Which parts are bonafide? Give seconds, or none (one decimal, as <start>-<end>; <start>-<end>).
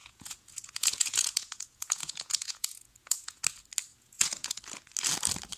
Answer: 3.4-3.9; 4.6-5.6